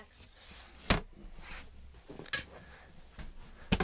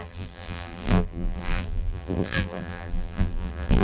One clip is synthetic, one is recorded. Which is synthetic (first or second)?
second